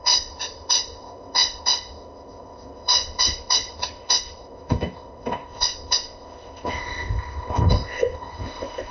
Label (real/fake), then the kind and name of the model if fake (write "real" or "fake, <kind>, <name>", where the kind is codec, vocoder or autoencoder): fake, codec, ZipCodec